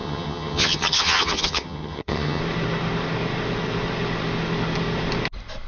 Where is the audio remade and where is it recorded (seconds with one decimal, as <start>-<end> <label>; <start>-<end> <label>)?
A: 0.0-2.4 remade; 2.4-5.7 recorded